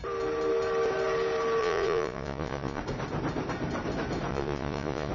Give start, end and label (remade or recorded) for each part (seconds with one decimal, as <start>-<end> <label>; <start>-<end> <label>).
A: 0.0-1.6 recorded; 1.6-2.8 remade; 2.8-4.3 recorded; 4.3-5.1 remade